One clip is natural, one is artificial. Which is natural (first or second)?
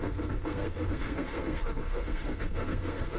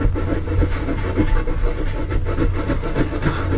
second